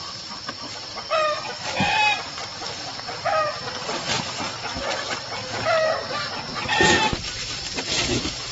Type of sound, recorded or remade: recorded